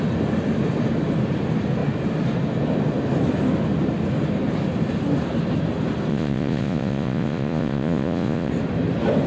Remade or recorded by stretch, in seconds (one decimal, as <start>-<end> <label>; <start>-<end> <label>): 0.0-6.1 recorded; 6.1-8.5 remade; 8.5-9.3 recorded